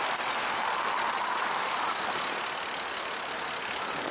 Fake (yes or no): no